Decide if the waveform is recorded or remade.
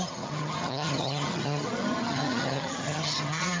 remade